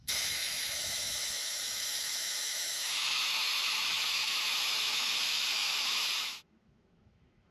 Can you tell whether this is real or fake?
fake